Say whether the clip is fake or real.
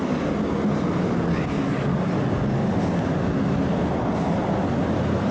real